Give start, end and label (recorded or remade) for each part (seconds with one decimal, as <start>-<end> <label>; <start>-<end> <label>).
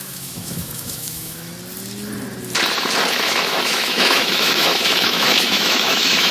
0.0-1.5 remade; 1.5-3.1 recorded; 3.1-6.3 remade